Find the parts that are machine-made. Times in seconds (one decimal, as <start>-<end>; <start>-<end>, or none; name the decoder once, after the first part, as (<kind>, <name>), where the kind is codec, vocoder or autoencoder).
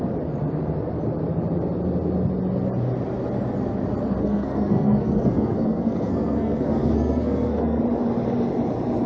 4.2-7.8 (codec, SNAC)